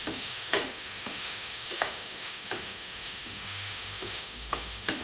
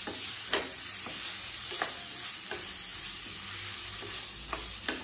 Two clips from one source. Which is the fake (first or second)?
first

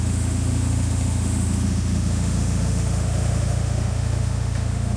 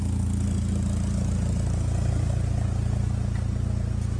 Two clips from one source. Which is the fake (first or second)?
first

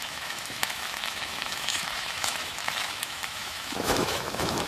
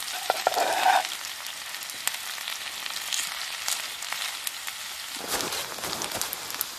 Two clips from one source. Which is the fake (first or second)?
first